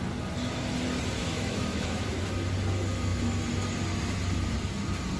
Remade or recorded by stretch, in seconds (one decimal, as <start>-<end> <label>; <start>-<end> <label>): 0.0-1.2 recorded; 1.2-2.3 remade; 2.3-5.2 recorded